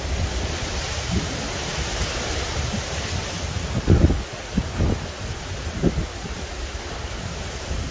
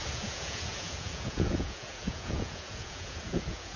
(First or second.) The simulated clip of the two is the second